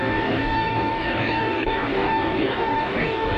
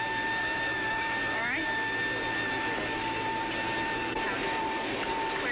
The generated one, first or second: first